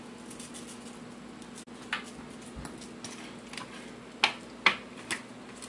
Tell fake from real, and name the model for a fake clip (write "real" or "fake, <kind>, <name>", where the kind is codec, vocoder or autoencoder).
real